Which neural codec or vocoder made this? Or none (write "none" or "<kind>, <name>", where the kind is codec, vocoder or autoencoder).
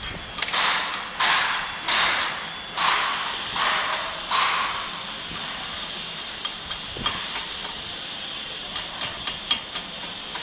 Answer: none